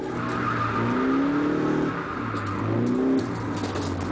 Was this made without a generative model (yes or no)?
yes